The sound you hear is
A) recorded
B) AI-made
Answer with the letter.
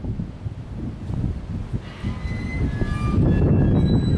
A